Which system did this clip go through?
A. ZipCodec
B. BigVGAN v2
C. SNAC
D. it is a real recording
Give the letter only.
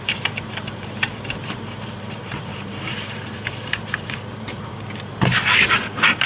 B